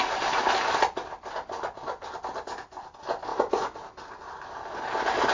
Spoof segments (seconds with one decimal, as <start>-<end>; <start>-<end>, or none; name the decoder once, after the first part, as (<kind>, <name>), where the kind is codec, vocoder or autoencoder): none